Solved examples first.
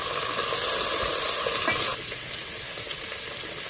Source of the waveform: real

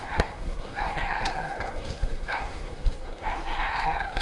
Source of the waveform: fake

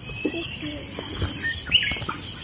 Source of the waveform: real